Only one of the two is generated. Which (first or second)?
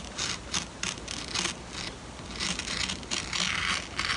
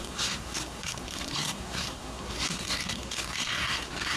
second